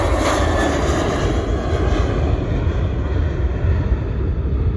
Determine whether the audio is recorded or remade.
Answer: recorded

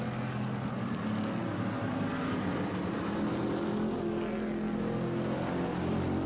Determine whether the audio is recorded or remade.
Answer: recorded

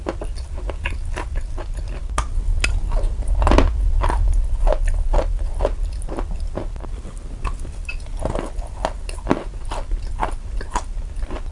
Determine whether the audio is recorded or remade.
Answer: recorded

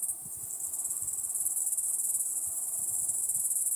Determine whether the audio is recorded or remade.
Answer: recorded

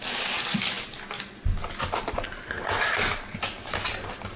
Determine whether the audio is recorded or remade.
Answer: recorded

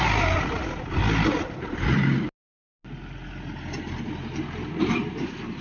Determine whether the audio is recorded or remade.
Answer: recorded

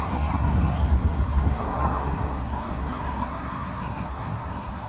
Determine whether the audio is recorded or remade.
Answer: remade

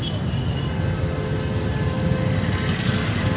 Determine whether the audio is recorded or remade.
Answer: recorded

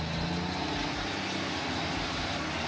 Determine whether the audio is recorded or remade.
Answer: recorded